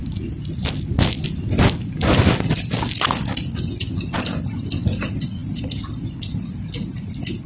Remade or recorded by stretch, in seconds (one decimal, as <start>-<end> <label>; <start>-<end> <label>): 0.0-4.5 recorded; 4.5-7.5 remade